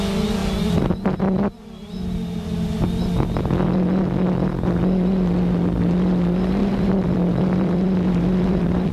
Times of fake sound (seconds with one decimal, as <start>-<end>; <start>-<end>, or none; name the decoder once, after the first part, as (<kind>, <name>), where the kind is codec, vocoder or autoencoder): 6.6-8.9 (vocoder, BigVGAN v2)

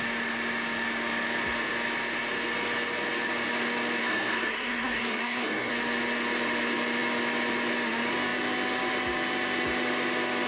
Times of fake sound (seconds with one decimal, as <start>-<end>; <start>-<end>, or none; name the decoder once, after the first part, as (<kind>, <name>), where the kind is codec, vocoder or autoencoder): 4.0-5.7 (codec, SNAC)

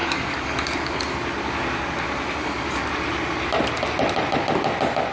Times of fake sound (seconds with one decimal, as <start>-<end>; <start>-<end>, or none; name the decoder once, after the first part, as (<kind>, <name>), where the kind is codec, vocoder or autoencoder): 0.0-1.0 (codec, DAC); 2.4-2.9

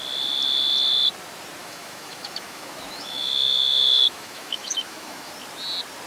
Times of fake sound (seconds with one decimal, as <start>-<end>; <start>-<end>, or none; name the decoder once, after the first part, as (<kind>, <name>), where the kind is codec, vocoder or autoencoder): 1.6-5.3 (autoencoder, DAC-VAE)

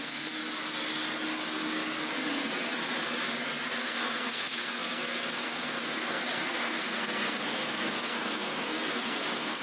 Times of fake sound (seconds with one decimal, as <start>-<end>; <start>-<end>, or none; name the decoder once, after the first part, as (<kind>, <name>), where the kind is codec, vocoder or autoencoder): 0.0-0.4 (codec, SNAC); 3.7-9.6

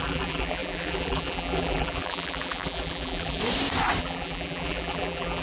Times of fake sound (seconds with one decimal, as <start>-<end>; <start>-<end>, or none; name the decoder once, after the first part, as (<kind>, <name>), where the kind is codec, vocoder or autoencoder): 0.0-3.4 (vocoder, BigVGAN v2); 4.0-5.4